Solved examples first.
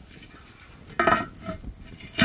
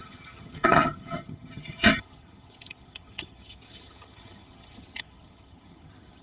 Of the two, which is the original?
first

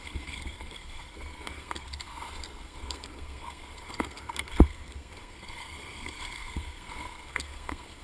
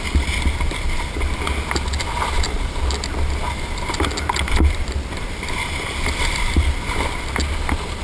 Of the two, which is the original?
second